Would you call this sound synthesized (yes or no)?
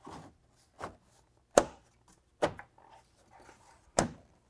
no